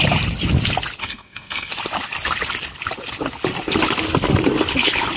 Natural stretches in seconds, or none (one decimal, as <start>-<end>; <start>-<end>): 0.0-1.0; 1.7-5.2